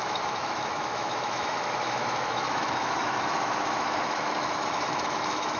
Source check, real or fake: fake